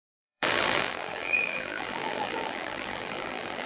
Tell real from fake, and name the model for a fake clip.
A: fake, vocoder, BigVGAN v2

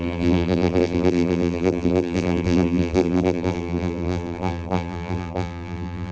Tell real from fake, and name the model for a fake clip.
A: fake, vocoder, BigVGAN v2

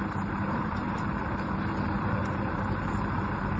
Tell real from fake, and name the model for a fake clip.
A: fake, vocoder, BigVGAN v2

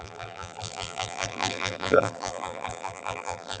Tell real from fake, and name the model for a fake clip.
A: fake, vocoder, BigVGAN v2